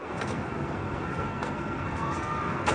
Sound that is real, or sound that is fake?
fake